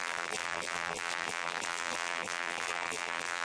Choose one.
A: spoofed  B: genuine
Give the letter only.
A